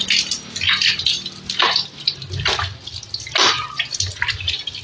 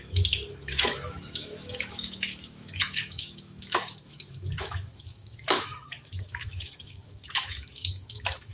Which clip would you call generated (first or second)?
second